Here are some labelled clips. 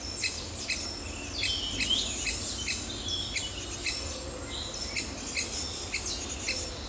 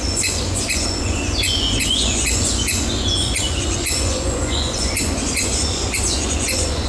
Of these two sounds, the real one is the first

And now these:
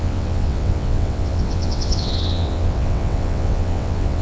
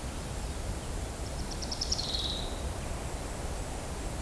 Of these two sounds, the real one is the second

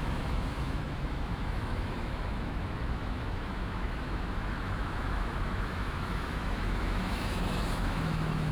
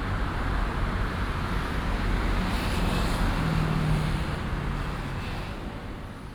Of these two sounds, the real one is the second